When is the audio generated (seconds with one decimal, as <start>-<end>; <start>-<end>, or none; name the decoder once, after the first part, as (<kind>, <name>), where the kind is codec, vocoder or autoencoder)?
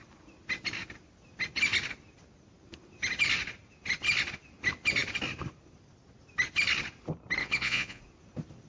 7.4-8.0 (vocoder, Vocos)